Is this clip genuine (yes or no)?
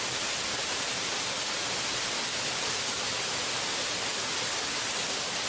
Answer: yes